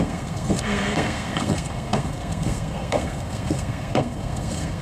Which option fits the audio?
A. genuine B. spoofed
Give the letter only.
B